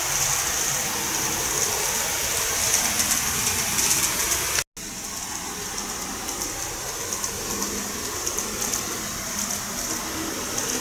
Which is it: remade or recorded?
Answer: recorded